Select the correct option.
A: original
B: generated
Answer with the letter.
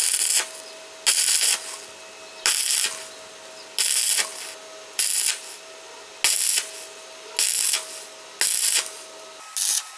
A